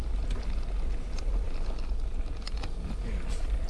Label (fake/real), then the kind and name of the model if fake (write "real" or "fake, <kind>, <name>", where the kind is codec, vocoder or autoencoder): real